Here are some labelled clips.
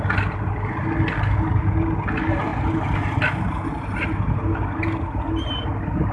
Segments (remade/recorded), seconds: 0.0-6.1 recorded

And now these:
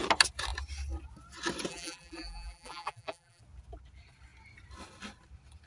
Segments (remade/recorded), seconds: 0.0-1.7 recorded; 1.7-3.4 remade; 3.4-5.7 recorded